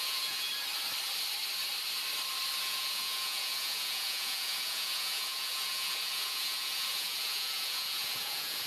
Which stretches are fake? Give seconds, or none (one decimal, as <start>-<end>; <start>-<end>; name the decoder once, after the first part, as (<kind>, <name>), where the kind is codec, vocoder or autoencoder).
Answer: 0.0-0.5 (vocoder, Vocos); 2.6-8.7